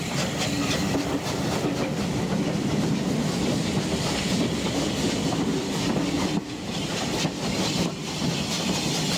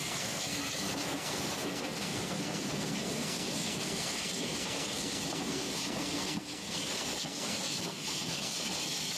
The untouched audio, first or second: first